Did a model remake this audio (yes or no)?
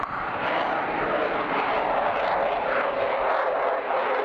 no